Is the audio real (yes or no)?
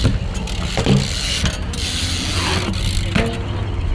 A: yes